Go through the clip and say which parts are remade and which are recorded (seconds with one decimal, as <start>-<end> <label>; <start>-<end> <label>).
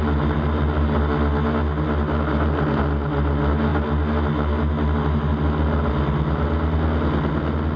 0.0-7.8 recorded